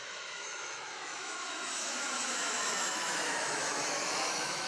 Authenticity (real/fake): fake